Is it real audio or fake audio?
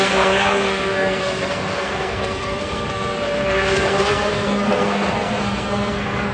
fake